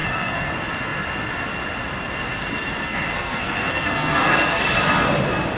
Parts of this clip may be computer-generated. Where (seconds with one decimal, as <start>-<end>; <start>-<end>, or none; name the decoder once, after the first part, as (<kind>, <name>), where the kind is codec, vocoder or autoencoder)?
0.0-0.5 (codec, SNAC); 2.8-4.6